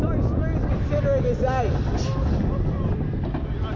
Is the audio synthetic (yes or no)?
no